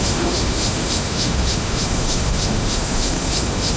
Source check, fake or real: fake